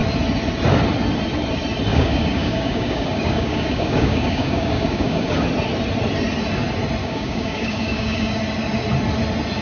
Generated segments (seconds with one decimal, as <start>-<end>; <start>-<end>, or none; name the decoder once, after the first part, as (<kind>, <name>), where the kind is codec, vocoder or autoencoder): 1.9-5.3 (codec, DAC); 7.0-8.4